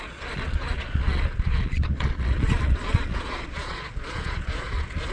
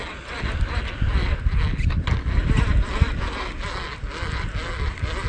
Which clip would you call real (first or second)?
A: second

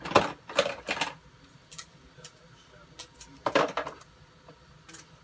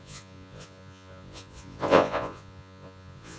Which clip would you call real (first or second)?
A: first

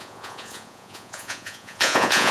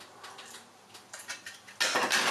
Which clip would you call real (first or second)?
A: second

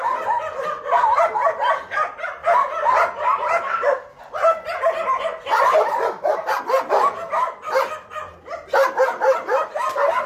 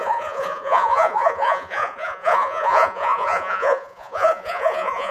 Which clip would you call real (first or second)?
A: first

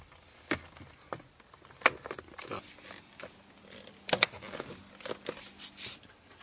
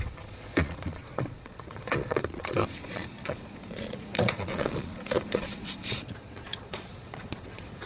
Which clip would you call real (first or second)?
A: first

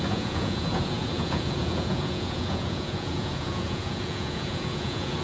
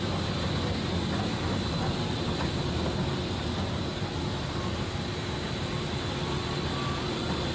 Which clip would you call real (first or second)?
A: second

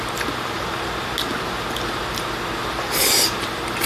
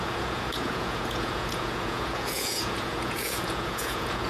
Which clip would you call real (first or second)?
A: first